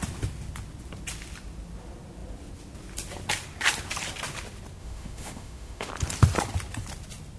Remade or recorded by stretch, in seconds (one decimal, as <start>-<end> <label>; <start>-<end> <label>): 0.0-4.8 recorded; 4.8-5.9 remade; 5.9-7.4 recorded